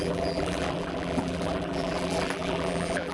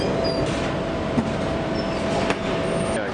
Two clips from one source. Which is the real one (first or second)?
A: second